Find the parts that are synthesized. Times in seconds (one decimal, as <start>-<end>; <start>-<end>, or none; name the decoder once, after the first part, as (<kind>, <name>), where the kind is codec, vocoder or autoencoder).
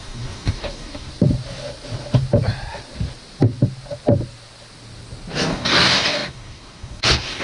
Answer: 0.0-1.1 (codec, DAC); 5.4-7.4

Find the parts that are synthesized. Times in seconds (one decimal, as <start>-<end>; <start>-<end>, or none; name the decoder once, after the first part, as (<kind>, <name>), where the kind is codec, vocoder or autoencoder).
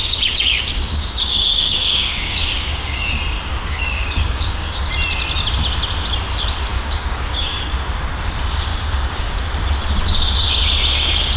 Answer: 0.0-3.1 (codec, DAC); 3.5-4.9; 6.7-7.7; 8.7-9.4